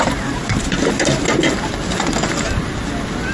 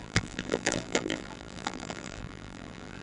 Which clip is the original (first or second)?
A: first